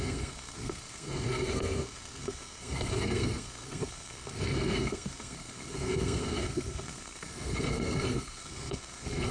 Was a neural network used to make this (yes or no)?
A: yes